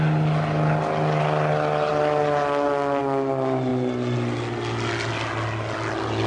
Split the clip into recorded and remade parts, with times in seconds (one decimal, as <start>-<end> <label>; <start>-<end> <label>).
0.0-6.3 recorded